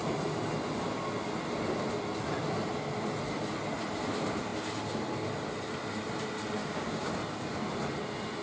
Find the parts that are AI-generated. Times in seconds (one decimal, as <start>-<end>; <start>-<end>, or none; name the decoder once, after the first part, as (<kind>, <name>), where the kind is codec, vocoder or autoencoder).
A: 6.6-7.1 (codec, DAC)